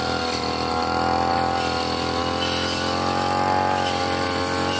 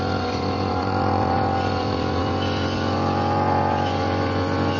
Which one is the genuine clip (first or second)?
first